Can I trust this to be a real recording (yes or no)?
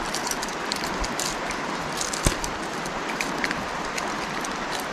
yes